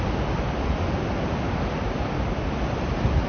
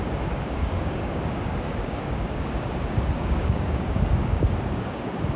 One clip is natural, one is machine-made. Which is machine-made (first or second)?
second